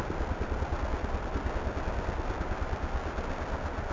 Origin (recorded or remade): recorded